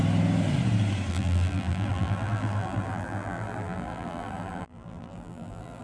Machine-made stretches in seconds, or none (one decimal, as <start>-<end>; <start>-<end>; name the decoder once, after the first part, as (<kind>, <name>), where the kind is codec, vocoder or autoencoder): 1.1-5.8 (vocoder, BigVGAN v2)